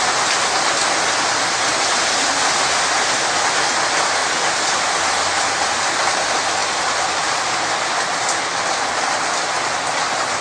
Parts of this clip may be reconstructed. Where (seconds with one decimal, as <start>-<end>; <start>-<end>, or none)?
4.2-4.9; 6.6-7.8